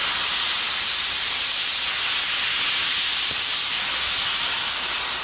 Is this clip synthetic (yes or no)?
no